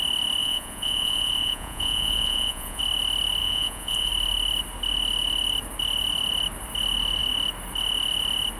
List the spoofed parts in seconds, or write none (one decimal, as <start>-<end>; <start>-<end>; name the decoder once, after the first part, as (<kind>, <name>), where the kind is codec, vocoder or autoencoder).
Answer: 0.4-2.8 (vocoder, Vocos); 3.4-4.1